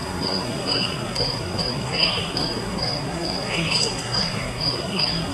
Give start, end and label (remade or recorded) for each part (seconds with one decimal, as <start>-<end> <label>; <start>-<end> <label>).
0.0-5.3 remade